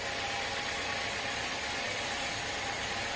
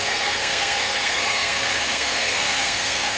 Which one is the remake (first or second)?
second